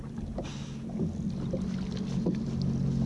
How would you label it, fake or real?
real